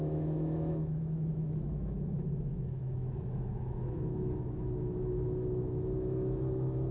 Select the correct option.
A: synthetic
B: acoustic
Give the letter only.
A